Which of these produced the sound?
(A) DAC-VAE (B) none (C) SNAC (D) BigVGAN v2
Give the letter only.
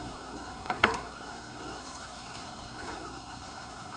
C